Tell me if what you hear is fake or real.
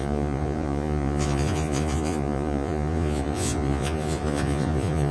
fake